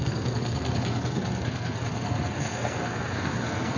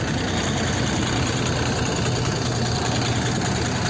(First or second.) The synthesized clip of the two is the first